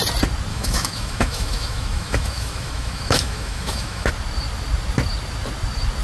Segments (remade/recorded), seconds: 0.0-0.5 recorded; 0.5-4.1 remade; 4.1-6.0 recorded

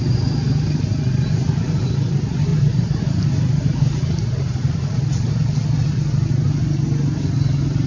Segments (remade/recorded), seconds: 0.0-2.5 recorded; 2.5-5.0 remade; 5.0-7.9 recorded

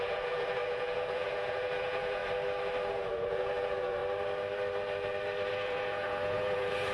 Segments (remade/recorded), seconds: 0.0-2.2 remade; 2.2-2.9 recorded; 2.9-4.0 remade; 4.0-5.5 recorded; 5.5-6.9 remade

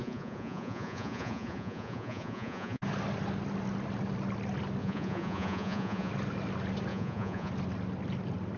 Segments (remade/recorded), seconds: 0.0-2.8 remade; 2.8-4.8 recorded; 4.8-6.1 remade; 6.1-6.9 recorded; 6.9-7.5 remade; 7.5-8.6 recorded